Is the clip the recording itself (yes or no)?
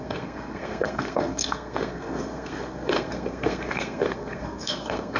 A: no